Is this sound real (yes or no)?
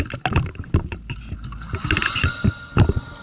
yes